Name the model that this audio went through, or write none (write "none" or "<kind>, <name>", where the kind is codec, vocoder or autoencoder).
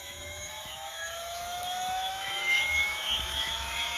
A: autoencoder, DAC-VAE